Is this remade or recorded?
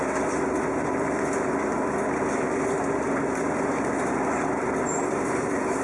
remade